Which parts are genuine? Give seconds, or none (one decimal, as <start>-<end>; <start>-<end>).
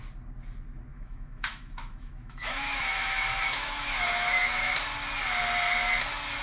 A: 0.0-0.9; 4.7-6.4